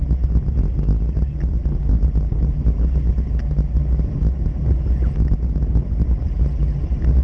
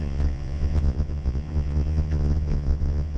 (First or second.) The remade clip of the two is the second